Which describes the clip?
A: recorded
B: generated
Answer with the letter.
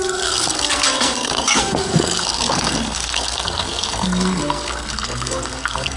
B